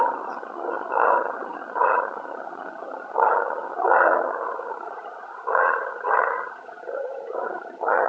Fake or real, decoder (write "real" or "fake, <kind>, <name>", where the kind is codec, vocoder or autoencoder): fake, vocoder, HiFi-GAN